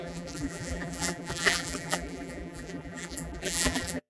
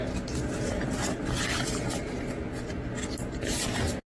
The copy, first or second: first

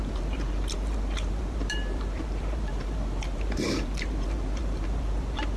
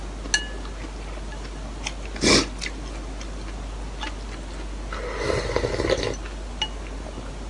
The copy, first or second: first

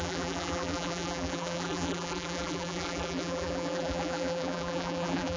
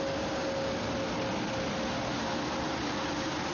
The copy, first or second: first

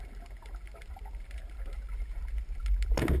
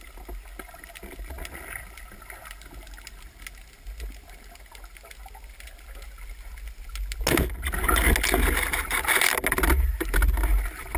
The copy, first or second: first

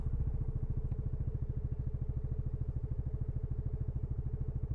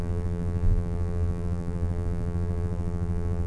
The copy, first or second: second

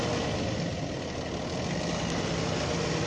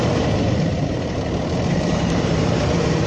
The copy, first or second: second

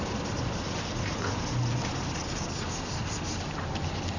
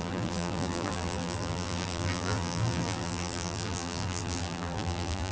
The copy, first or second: second